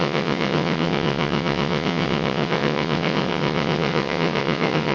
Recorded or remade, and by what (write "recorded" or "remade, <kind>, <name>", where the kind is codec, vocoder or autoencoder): remade, vocoder, WaveNeXt